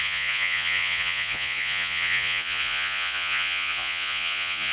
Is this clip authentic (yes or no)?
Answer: no